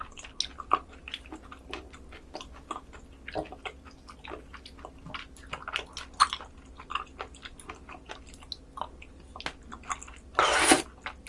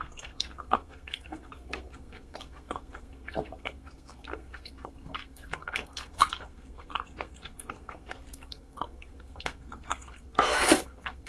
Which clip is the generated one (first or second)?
second